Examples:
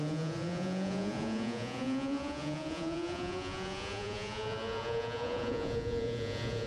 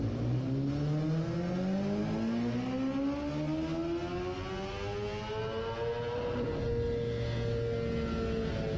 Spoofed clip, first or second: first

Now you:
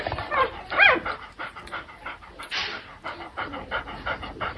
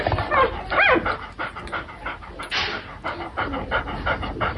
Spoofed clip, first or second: first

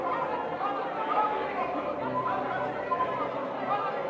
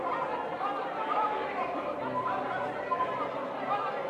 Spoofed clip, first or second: second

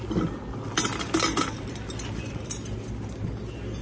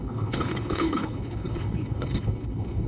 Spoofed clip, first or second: second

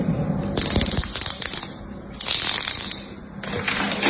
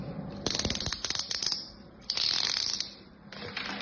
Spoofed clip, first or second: second